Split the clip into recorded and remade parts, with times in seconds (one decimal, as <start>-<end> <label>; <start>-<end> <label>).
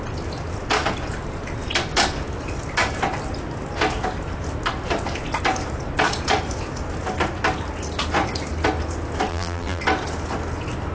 0.0-9.3 recorded; 9.3-9.8 remade; 9.8-10.9 recorded